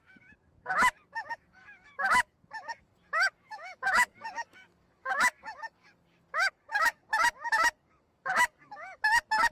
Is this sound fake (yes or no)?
yes